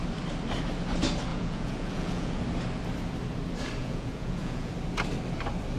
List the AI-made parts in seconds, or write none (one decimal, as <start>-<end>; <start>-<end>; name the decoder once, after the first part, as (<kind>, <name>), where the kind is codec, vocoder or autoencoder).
1.3-2.4 (vocoder, Vocos); 3.8-4.7